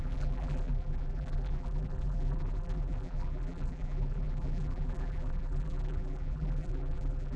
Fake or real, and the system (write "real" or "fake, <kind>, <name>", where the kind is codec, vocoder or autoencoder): fake, vocoder, BigVGAN v2